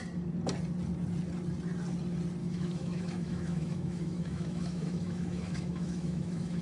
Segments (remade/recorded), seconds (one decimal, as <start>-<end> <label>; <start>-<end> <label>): 0.0-2.4 recorded; 2.4-6.6 remade